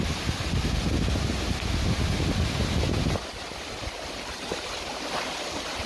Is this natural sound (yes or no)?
yes